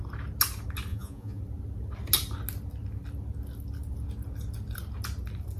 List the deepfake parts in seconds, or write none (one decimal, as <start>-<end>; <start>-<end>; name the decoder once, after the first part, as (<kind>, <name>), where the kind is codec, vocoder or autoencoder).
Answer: 0.9-1.4 (vocoder, Vocos)